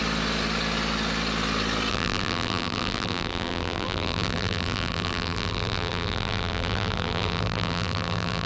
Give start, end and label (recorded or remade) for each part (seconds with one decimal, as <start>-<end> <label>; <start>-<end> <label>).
0.0-1.9 recorded; 1.9-8.5 remade